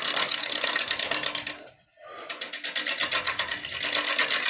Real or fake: real